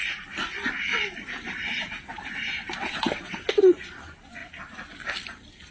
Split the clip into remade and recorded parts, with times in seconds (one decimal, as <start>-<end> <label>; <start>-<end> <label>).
0.0-0.9 recorded; 0.9-3.6 remade; 3.6-5.7 recorded